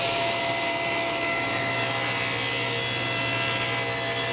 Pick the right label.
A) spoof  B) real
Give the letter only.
B